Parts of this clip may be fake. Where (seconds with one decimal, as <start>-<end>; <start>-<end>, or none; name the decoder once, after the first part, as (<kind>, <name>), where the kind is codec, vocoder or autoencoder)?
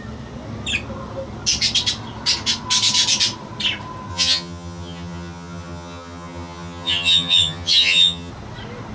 4.1-8.3 (vocoder, HiFi-GAN)